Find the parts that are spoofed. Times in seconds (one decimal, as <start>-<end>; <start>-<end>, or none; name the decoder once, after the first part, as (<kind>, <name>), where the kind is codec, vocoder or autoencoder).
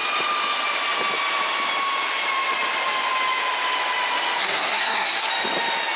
4.4-5.3 (codec, SNAC)